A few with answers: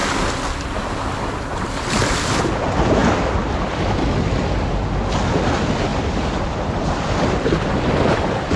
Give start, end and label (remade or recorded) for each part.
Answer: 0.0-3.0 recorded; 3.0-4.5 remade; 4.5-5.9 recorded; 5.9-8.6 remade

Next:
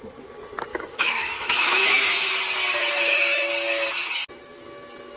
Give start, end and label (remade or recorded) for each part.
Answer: 0.0-0.7 recorded; 0.7-2.4 remade; 2.4-2.8 recorded; 2.8-3.5 remade; 3.5-5.2 recorded

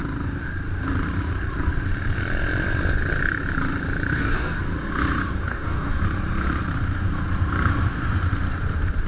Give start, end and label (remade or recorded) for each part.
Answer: 0.0-4.1 recorded; 4.1-4.6 remade; 4.6-5.5 recorded; 5.5-6.0 remade; 6.0-9.1 recorded

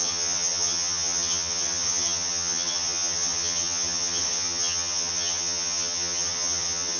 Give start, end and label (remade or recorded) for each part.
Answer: 0.0-7.0 remade

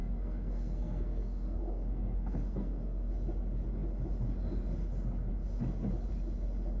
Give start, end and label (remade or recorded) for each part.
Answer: 0.0-3.1 remade; 3.1-6.8 recorded